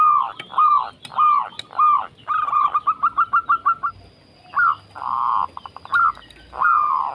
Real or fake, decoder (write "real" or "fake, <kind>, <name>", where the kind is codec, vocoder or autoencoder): real